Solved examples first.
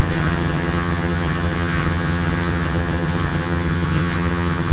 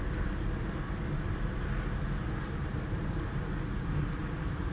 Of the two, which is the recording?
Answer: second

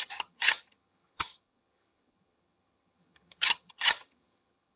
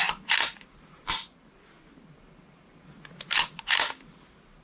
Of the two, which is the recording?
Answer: second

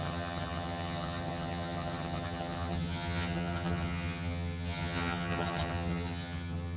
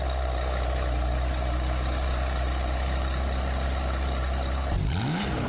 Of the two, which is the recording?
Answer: second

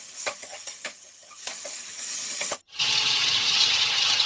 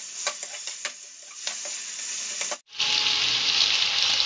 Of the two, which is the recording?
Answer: second